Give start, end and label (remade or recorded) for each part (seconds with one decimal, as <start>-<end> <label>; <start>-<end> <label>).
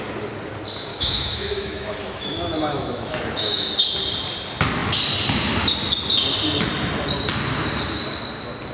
0.0-0.9 recorded; 0.9-3.7 remade; 3.7-8.7 recorded